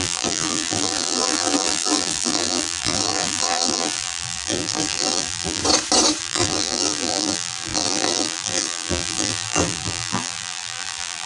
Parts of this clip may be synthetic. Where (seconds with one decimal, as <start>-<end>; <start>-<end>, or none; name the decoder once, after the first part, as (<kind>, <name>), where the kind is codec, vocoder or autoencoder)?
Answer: 0.0-5.6 (vocoder, BigVGAN v2); 6.2-11.3